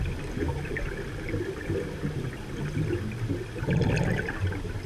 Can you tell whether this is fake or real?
real